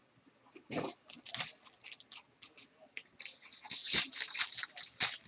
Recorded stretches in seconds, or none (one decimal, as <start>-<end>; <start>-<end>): 0.0-5.3